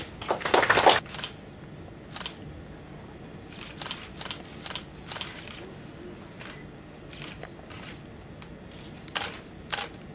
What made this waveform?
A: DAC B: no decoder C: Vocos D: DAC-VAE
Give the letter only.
B